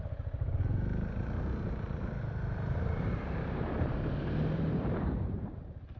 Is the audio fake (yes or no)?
yes